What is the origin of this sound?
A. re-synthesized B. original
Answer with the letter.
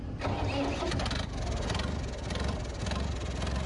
B